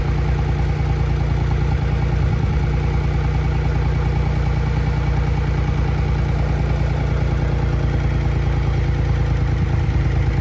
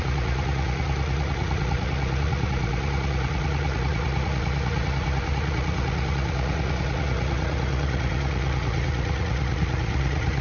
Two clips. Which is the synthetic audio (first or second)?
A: second